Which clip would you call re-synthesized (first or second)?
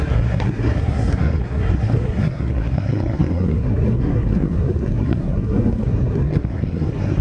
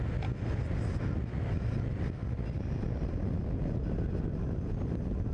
first